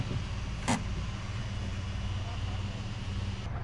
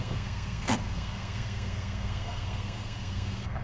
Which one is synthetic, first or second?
second